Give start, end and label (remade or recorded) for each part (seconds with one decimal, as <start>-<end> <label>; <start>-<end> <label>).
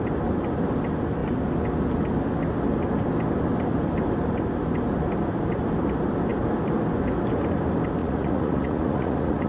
0.0-8.0 recorded; 8.0-9.5 remade